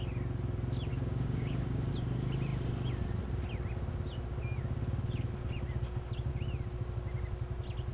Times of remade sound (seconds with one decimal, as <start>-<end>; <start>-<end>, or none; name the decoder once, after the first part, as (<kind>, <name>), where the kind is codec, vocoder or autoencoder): 0.9-1.9 (codec, DAC)